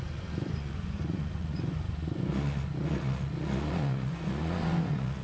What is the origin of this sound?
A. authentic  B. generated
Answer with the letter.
B